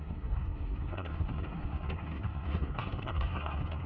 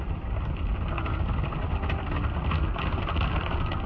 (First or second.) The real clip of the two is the second